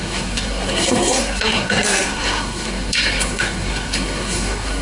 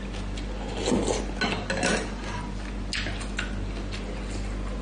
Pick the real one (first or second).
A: second